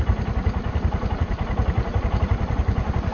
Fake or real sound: real